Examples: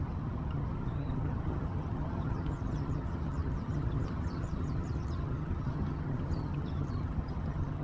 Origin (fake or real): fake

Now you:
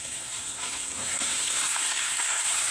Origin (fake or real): fake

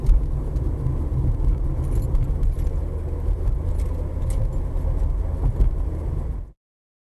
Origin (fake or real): real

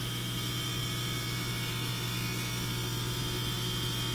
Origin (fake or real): fake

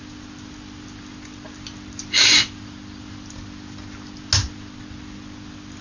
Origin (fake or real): real